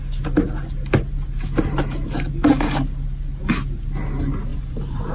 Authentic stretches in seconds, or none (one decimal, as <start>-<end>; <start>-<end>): 0.0-4.5

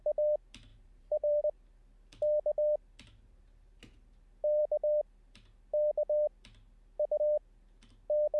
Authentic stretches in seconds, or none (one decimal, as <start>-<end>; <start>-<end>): 0.0-0.7; 1.4-8.4